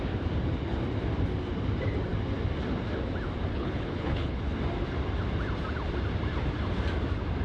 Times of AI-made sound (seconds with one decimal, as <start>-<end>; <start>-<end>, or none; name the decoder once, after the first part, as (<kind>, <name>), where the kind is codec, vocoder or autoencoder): 3.5-4.4 (codec, HILCodec)